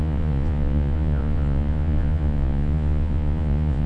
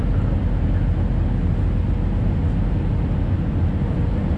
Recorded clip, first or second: second